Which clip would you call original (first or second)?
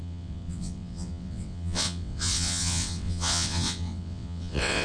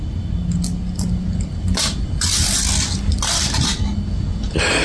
second